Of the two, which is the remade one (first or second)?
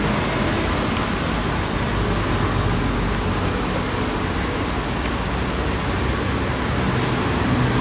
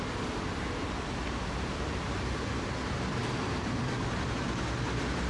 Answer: second